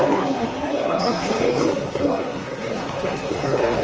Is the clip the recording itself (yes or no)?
no